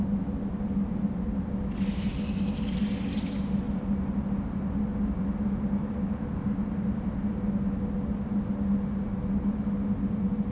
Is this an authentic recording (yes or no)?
yes